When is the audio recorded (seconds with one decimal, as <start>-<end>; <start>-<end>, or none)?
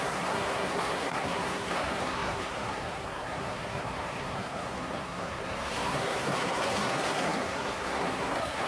none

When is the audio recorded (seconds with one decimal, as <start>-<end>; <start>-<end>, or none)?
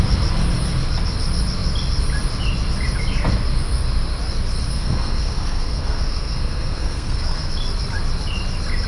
0.0-4.7; 7.5-8.9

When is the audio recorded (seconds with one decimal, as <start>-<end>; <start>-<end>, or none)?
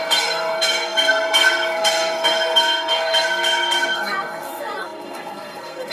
none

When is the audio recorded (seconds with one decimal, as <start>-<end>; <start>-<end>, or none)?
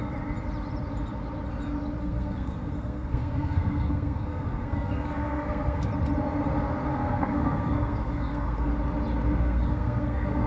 0.0-2.0; 5.9-6.9; 8.7-9.4